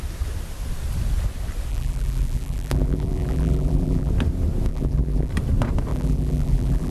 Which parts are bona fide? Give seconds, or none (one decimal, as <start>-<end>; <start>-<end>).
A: 0.0-1.7; 4.1-4.7; 5.3-5.9